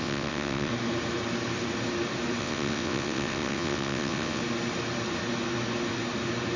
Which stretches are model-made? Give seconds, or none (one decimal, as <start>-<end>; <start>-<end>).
0.0-0.7; 2.4-4.4